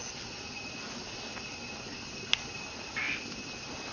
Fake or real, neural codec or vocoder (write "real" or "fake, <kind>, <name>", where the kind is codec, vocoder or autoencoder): real